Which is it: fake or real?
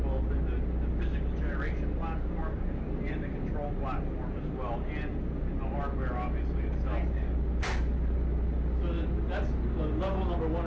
real